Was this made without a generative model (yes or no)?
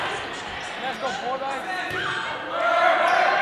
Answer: yes